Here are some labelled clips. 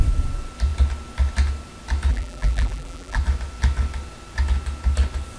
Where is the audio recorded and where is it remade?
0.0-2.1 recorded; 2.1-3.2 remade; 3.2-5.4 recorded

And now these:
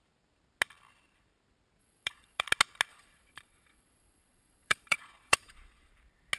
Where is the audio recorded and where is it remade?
0.0-1.8 recorded; 1.8-2.5 remade; 2.5-2.9 recorded; 2.9-5.9 remade; 5.9-6.4 recorded

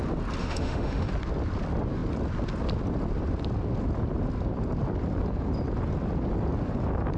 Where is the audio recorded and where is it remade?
0.0-0.4 recorded; 0.4-1.1 remade; 1.1-7.2 recorded

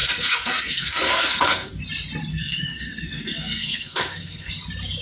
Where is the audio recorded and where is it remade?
0.0-1.8 remade; 1.8-2.3 recorded; 2.3-4.5 remade; 4.5-5.0 recorded

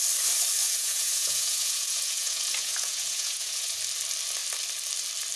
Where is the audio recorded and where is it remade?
0.0-0.6 recorded; 0.6-3.8 remade; 3.8-5.4 recorded